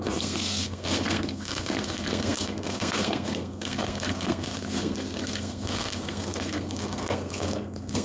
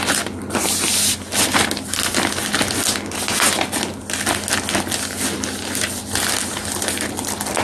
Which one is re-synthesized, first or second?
first